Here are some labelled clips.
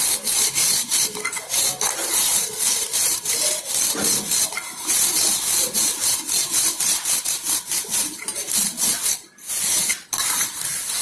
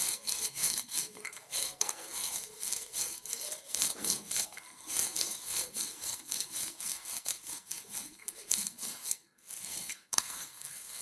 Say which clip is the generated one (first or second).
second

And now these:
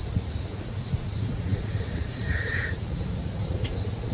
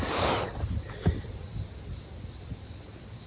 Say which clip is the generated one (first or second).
first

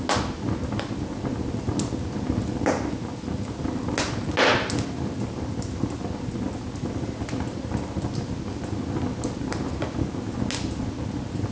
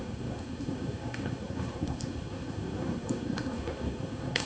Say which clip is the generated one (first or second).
second